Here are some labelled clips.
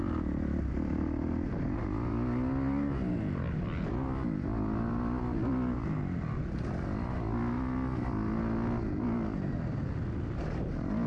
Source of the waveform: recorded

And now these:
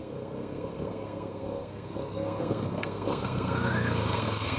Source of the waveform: remade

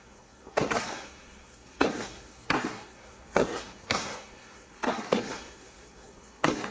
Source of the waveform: remade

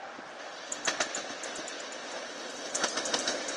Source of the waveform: recorded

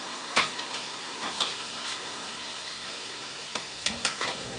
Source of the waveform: remade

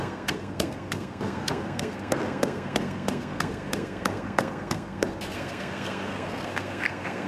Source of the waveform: remade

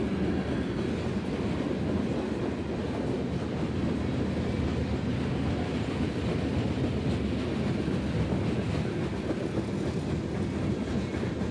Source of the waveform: recorded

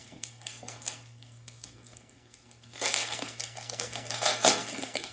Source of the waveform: remade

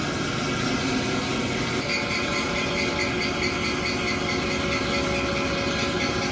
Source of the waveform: recorded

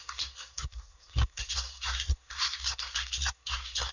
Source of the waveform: remade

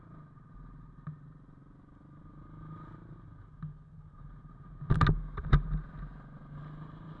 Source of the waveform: recorded